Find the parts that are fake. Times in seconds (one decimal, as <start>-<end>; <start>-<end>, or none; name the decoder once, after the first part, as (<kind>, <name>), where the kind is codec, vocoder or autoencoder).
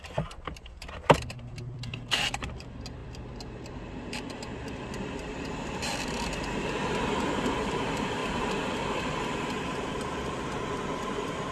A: 0.0-11.5 (vocoder, BigVGAN v2)